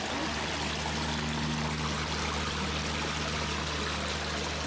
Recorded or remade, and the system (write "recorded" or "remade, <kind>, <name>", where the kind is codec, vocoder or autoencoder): recorded